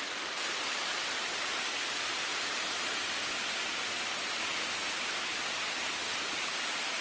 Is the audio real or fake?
real